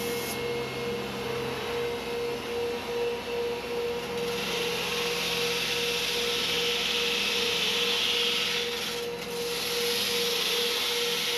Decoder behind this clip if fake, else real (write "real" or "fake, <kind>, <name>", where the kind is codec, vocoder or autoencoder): real